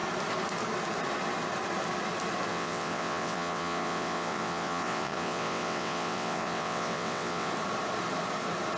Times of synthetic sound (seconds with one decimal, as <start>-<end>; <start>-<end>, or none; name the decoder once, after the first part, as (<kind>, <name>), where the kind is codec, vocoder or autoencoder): 2.5-7.5 (vocoder, WaveNeXt)